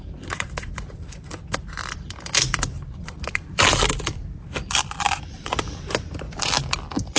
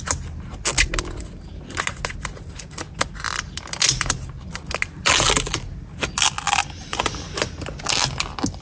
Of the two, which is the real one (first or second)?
second